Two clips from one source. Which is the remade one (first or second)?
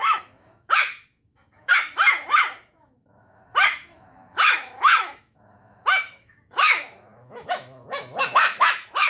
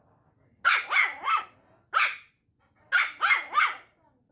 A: first